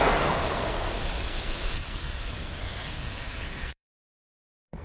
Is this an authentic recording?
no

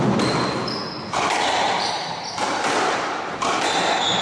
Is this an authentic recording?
yes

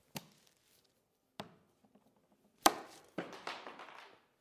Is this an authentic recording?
yes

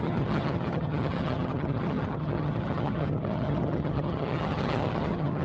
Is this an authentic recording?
no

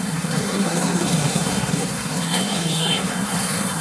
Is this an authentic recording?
no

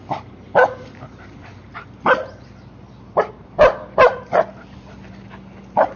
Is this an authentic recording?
yes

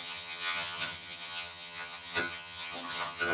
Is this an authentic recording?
no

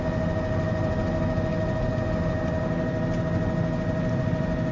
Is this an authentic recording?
yes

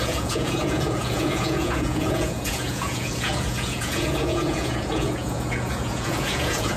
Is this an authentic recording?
no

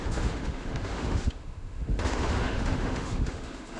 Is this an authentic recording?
no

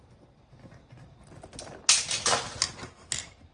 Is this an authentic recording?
yes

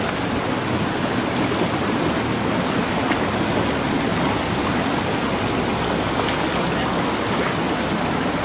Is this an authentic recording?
yes